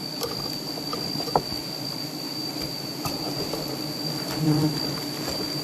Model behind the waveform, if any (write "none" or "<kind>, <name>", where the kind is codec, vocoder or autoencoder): none